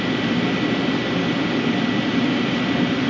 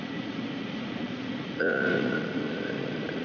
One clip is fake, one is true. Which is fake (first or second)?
second